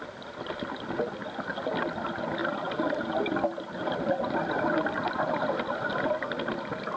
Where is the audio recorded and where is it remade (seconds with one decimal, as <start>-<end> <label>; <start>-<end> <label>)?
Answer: 0.0-7.0 recorded